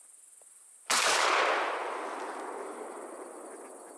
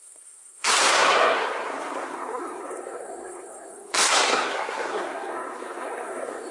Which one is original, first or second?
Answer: first